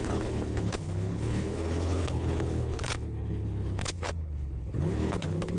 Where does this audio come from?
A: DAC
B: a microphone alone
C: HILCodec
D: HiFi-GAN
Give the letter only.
C